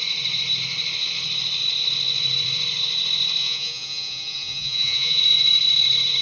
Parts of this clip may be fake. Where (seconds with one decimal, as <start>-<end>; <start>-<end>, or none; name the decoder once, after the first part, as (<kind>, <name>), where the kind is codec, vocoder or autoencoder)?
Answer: 3.4-5.2 (vocoder, Vocos)